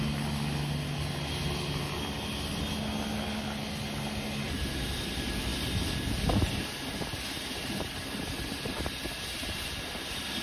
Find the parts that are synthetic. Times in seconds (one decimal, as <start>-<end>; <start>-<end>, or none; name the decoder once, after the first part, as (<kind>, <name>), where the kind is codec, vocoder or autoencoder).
none